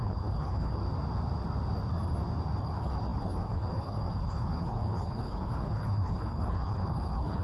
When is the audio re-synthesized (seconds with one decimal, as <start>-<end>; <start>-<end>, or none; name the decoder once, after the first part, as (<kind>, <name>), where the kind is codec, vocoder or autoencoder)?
0.0-0.8 (codec, HILCodec); 2.6-7.4